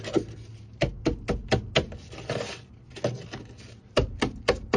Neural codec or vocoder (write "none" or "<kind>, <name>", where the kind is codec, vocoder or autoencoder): none